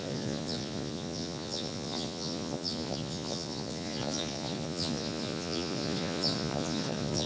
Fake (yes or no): yes